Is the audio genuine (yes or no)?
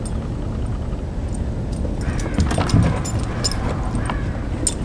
yes